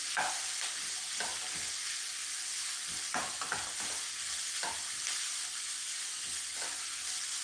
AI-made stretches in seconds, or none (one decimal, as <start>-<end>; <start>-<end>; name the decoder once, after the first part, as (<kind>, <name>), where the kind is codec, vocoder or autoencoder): none